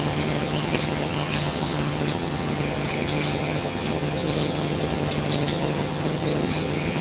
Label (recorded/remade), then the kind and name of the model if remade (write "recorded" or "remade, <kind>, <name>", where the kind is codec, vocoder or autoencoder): remade, vocoder, HiFi-GAN